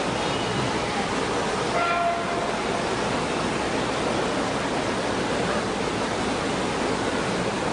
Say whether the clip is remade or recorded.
recorded